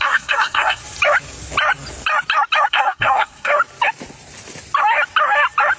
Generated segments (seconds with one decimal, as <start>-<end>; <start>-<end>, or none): 0.0-0.8; 2.7-3.5